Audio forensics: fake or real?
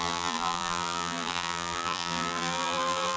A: fake